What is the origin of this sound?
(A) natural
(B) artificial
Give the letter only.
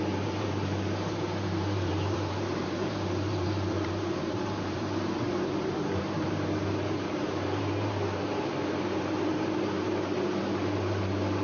B